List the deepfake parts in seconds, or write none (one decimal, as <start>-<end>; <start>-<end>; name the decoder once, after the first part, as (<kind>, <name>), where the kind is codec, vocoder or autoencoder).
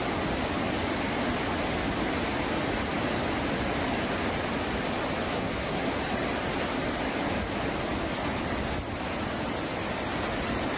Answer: 5.3-5.9 (codec, SNAC)